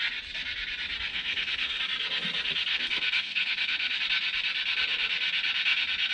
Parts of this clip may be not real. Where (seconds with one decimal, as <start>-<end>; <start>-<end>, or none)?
1.1-1.8; 2.7-4.0